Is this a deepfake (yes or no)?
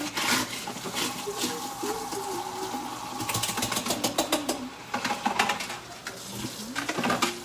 no